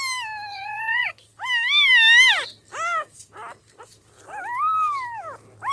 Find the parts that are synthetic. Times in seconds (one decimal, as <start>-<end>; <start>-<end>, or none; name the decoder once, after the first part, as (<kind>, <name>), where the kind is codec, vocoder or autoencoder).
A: 0.5-1.1 (vocoder, Vocos)